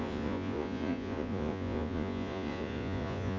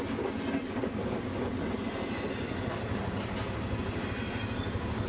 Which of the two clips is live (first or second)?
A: second